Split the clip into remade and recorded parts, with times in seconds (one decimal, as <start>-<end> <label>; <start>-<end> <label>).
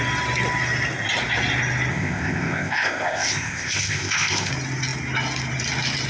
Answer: 0.0-1.9 recorded; 1.9-4.5 remade; 4.5-6.1 recorded